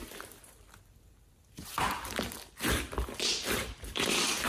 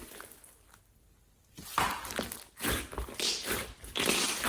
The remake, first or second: first